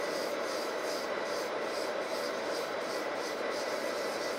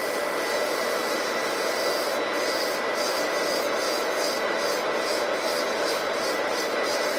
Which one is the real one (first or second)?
second